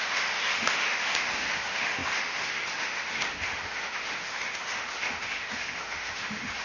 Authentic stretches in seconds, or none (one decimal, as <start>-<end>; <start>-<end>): none